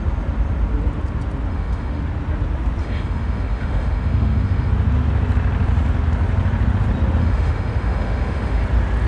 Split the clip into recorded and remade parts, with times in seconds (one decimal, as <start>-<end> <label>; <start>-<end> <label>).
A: 0.0-1.5 recorded; 1.5-2.0 remade; 2.0-2.8 recorded; 2.8-4.7 remade; 4.7-7.2 recorded; 7.2-8.6 remade; 8.6-9.1 recorded